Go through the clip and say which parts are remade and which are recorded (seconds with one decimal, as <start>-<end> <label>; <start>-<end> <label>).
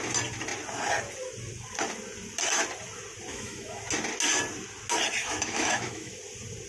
0.0-3.3 recorded; 3.3-3.8 remade; 3.8-5.2 recorded; 5.2-6.2 remade; 6.2-6.7 recorded